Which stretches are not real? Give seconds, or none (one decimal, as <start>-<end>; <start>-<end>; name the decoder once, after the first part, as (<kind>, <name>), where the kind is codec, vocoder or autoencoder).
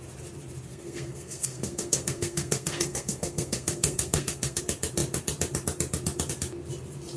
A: 0.7-4.6 (codec, SNAC)